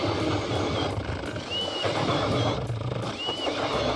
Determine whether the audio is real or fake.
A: real